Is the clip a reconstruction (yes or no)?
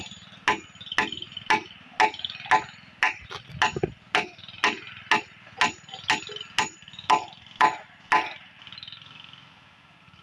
no